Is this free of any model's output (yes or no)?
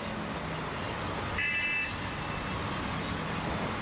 yes